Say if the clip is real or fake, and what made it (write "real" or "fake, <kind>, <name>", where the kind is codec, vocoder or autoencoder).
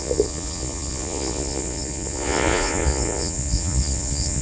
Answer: fake, vocoder, Vocos